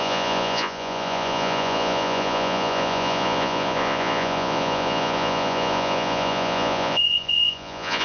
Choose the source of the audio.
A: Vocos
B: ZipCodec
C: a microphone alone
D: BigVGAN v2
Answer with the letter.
A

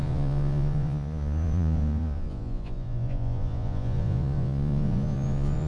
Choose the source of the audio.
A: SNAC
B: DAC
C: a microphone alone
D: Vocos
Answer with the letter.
D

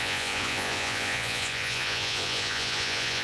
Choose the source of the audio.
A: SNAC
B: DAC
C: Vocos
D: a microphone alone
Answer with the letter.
C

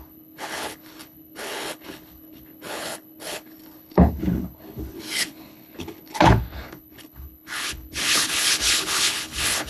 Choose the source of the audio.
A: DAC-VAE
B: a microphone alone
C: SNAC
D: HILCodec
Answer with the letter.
D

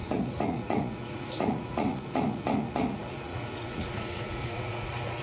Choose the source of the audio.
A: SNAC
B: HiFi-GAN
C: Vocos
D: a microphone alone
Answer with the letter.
C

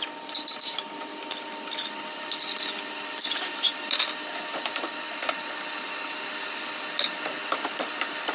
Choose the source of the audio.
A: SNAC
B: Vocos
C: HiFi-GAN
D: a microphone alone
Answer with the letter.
D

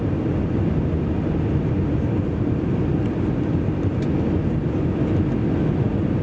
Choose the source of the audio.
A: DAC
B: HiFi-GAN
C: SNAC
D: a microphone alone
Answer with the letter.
D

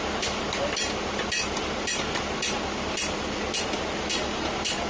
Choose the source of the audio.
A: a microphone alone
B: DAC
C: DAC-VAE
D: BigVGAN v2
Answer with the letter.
D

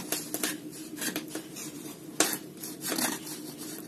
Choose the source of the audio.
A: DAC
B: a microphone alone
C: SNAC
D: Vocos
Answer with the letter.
B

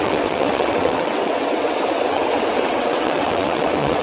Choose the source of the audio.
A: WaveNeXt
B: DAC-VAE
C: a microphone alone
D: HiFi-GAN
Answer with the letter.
A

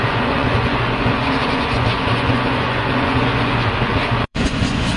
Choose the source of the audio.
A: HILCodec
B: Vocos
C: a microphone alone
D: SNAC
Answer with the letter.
B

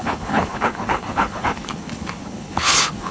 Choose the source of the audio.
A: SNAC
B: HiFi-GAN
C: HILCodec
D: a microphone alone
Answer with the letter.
C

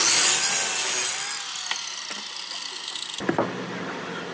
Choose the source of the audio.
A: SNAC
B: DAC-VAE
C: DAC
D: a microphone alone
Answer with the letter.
D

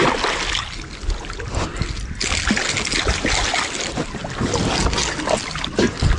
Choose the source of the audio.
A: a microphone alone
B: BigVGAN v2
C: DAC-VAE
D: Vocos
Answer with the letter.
A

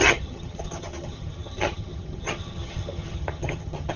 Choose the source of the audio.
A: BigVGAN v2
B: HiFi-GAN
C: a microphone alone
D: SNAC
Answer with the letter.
B